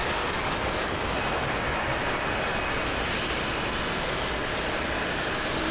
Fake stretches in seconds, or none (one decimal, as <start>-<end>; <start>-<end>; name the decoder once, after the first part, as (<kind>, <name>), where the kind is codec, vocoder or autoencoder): 0.0-1.2 (codec, DAC)